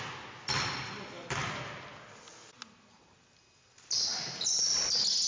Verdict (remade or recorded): recorded